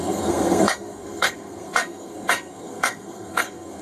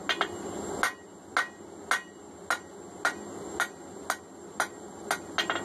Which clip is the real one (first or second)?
second